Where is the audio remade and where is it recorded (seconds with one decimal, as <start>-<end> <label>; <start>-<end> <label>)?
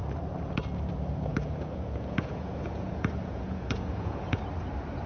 0.0-1.3 recorded; 1.3-4.4 remade; 4.4-5.1 recorded